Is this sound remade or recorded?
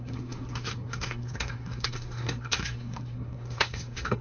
remade